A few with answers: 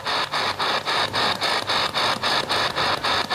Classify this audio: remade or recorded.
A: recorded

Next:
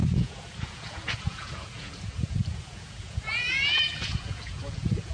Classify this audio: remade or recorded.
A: remade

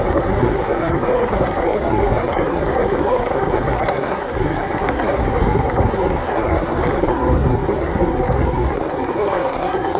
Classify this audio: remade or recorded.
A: remade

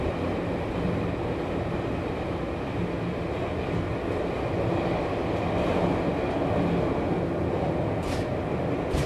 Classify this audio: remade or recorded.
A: recorded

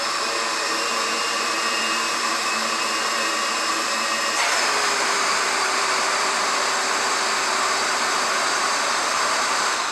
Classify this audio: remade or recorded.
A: remade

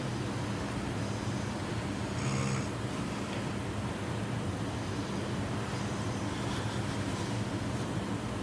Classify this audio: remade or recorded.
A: recorded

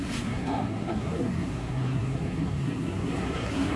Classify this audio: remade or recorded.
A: remade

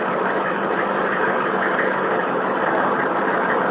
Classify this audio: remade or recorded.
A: remade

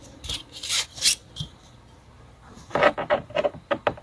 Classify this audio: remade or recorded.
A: recorded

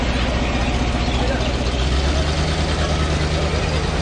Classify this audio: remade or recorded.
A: recorded